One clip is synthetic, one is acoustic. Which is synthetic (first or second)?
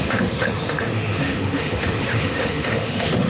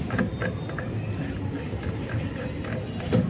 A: first